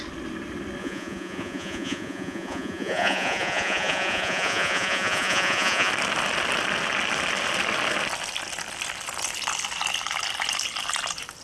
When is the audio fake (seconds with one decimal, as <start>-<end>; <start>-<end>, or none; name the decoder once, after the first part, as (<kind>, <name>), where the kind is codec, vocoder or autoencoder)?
0.8-5.9 (vocoder, Vocos)